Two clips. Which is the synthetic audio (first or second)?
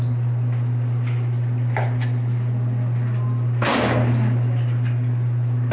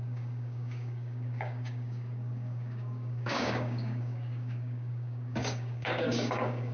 second